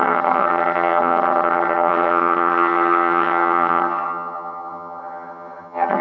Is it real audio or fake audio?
fake